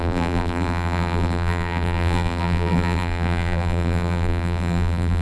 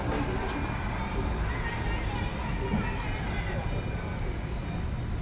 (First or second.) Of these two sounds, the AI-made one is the first